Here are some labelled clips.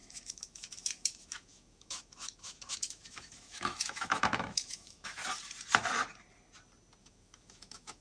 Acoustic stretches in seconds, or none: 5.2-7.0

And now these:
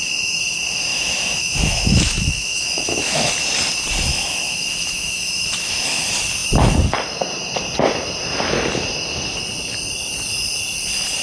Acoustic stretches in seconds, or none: 0.0-0.9; 3.3-4.1; 6.0-11.2

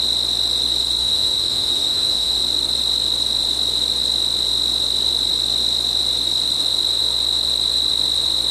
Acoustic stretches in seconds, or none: 0.0-1.0; 2.4-8.5

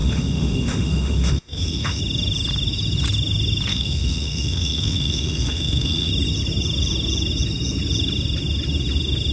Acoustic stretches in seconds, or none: 2.0-3.7; 6.1-9.3

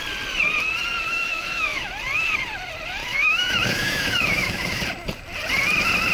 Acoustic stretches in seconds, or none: 0.0-1.1; 1.9-3.0; 4.8-6.1

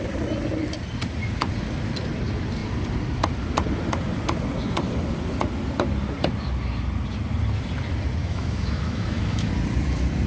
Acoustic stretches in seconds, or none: 0.0-8.2; 9.5-10.3

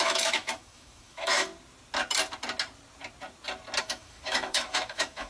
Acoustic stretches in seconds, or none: 1.5-3.8

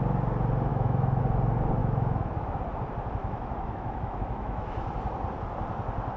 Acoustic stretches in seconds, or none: 0.0-0.7; 1.2-1.8; 2.6-3.2; 4.9-6.2